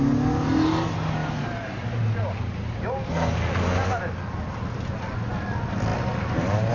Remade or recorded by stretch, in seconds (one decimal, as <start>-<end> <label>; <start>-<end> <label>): 0.0-6.7 recorded